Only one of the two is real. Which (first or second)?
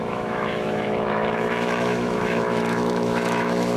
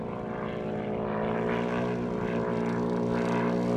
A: second